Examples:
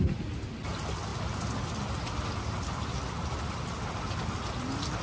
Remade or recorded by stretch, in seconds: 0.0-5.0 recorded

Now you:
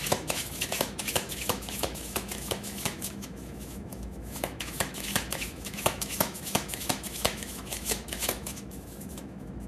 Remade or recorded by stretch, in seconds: 0.0-9.7 remade

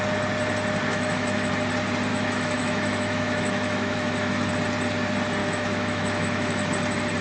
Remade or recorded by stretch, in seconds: 0.0-0.9 recorded; 0.9-1.5 remade; 1.5-2.1 recorded; 2.1-4.5 remade; 4.5-5.4 recorded; 5.4-6.7 remade; 6.7-7.2 recorded

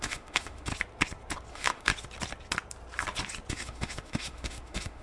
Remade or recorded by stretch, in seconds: 0.0-0.7 remade; 0.7-1.5 recorded; 1.5-1.9 remade; 1.9-3.5 recorded; 3.5-5.0 remade

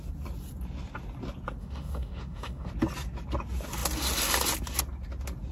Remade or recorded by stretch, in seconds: 0.0-1.6 recorded; 1.6-2.7 remade; 2.7-5.5 recorded

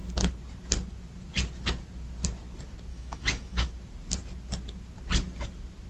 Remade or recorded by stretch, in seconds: 0.0-2.9 recorded; 2.9-3.7 remade; 3.7-5.9 recorded

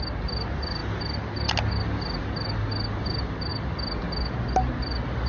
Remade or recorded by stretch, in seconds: 0.0-5.3 recorded

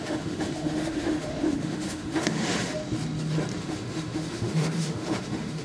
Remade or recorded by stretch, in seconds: 0.0-2.7 remade; 2.7-3.6 recorded; 3.6-5.6 remade